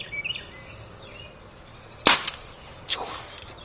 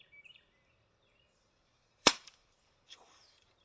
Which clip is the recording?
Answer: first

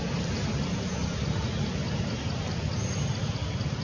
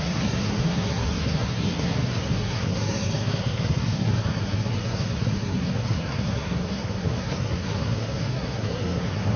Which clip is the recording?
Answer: first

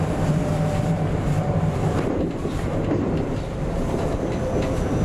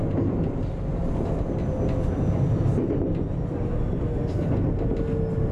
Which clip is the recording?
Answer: second